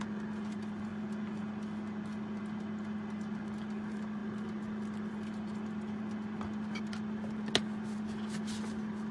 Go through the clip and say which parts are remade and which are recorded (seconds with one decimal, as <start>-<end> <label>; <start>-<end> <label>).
0.0-9.1 recorded